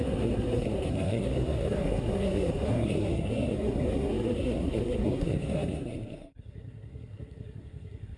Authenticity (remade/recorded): remade